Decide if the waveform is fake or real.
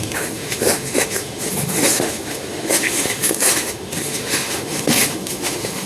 fake